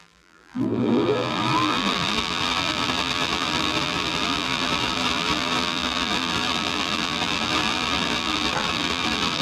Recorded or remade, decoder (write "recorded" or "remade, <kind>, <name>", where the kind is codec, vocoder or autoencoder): remade, vocoder, BigVGAN v2